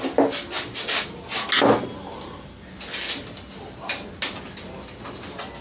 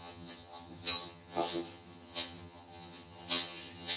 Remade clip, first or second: second